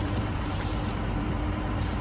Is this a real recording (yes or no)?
no